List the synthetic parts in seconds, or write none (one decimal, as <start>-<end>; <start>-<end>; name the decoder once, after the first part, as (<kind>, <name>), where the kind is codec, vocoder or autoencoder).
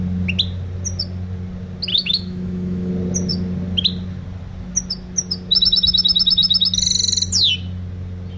1.9-2.9 (autoencoder, DAC-VAE)